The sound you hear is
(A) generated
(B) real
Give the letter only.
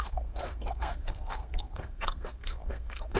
A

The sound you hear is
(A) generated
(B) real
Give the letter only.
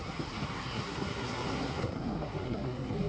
A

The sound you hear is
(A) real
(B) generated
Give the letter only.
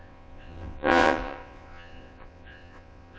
B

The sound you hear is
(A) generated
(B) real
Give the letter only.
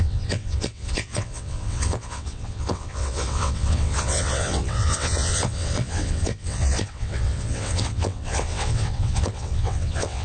A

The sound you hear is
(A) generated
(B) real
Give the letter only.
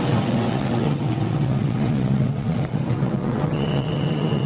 A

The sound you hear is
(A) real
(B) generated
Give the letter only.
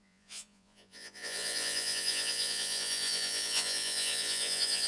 B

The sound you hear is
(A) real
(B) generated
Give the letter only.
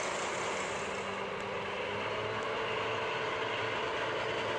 A